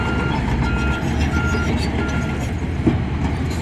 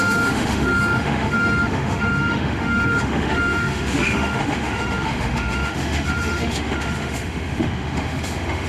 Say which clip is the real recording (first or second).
first